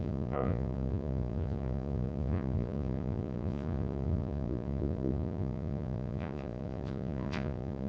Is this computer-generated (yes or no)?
yes